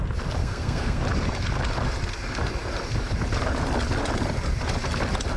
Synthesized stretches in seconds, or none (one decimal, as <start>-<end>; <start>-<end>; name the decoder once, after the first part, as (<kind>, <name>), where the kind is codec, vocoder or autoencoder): 0.4-1.0 (codec, SNAC)